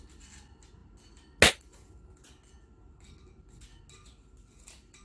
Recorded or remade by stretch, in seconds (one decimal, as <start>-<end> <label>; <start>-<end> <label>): 0.0-5.0 recorded